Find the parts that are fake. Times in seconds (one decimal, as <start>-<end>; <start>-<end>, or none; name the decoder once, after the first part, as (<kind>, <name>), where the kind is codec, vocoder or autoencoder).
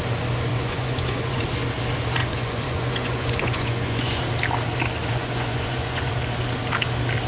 0.5-1.4 (vocoder, Vocos); 2.2-4.2; 5.0-6.1